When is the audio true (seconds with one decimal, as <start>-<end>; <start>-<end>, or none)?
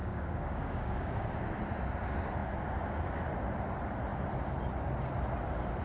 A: 1.3-5.8